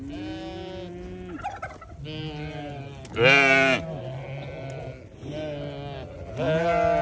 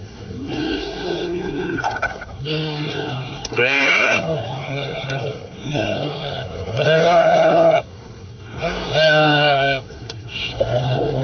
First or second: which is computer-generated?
second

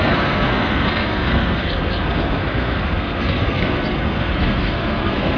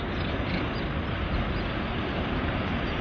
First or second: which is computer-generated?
first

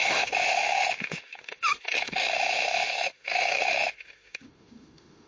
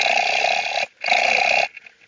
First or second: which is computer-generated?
first